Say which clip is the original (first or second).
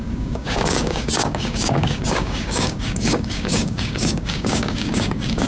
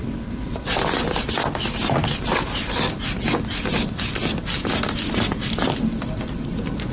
second